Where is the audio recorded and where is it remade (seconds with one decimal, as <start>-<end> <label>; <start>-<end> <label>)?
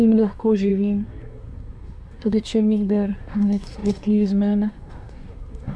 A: 0.0-5.8 remade